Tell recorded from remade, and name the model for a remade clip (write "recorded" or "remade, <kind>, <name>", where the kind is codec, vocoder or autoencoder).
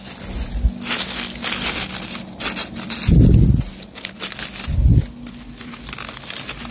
recorded